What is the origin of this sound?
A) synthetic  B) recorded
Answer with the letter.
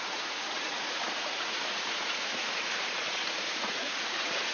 A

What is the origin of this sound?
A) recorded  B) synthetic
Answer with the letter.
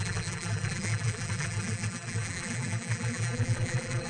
B